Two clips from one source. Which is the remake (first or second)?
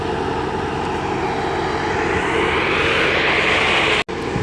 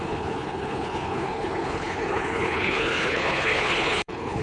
second